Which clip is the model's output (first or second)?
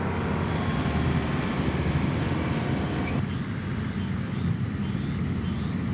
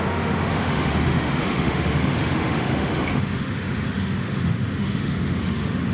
second